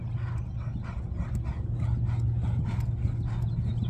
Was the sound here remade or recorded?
recorded